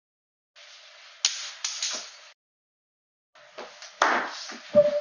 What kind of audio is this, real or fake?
real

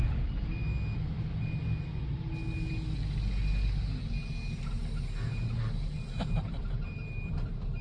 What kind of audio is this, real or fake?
real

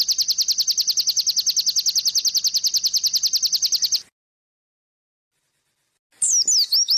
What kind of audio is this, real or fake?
real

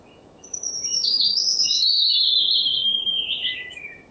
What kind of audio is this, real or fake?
fake